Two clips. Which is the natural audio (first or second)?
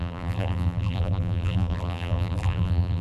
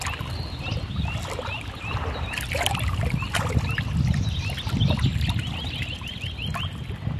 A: second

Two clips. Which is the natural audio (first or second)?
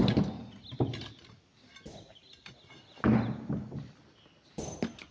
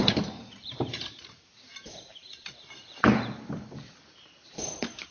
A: first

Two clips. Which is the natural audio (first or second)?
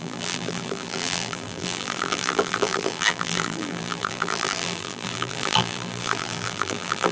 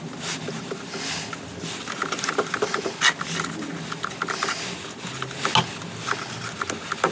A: second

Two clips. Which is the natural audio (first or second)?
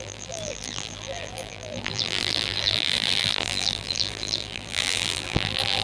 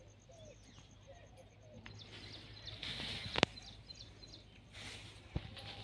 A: second